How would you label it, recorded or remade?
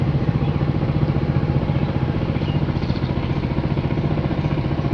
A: remade